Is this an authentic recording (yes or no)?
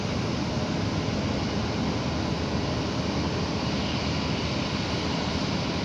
yes